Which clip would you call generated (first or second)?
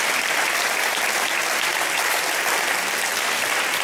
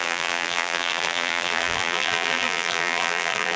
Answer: second